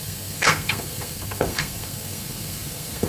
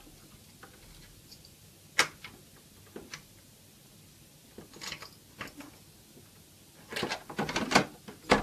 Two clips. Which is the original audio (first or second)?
second